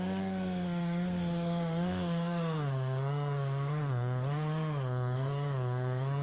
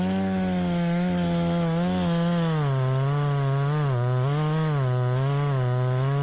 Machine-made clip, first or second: first